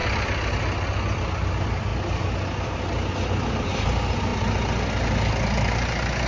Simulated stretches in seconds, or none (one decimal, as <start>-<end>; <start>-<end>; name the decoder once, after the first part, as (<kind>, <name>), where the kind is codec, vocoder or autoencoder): none